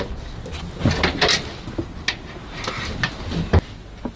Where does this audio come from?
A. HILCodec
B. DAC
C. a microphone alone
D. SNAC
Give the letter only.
C